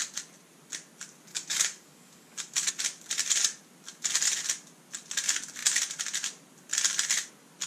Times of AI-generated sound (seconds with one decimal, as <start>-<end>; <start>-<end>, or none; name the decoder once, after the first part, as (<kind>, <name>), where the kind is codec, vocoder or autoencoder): 1.3-2.7 (codec, DAC)